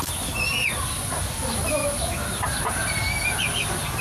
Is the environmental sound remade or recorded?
recorded